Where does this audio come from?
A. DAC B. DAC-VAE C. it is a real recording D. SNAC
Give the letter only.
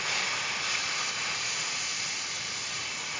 C